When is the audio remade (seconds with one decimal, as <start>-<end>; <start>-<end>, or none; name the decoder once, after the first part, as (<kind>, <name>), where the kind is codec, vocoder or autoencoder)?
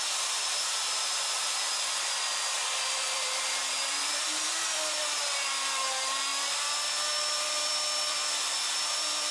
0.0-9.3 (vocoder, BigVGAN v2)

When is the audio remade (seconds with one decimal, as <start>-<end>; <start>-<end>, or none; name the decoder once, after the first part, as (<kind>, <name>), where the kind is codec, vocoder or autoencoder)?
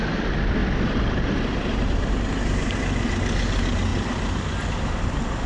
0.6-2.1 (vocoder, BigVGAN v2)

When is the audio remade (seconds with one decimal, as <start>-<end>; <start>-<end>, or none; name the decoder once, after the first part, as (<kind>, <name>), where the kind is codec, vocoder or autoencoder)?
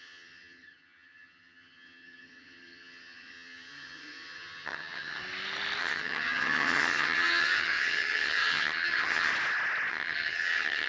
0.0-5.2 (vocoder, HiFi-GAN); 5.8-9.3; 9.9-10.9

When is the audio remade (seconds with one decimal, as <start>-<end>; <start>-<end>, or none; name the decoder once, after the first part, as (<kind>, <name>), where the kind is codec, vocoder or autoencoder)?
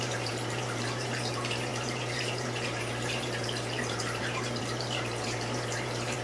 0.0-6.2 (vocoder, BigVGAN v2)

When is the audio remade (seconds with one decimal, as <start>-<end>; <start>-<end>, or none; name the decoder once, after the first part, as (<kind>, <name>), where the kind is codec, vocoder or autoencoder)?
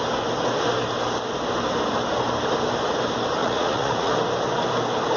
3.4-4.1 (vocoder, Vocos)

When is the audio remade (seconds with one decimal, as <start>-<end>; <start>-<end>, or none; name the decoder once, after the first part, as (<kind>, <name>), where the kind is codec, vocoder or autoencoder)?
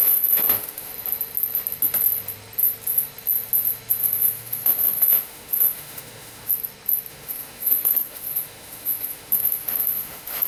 0.0-0.9 (autoencoder, DAC-VAE); 4.0-6.5; 7.1-10.5